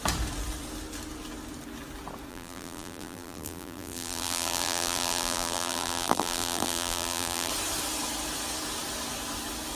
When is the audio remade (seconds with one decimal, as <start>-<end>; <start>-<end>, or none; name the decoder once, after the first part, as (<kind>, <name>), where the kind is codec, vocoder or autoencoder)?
2.3-7.5 (vocoder, BigVGAN v2)